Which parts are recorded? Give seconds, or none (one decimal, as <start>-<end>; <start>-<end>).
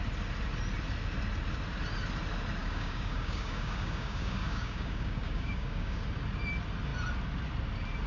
0.0-2.6; 6.0-8.1